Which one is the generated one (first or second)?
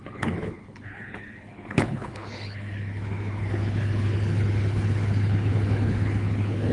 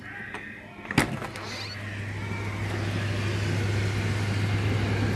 first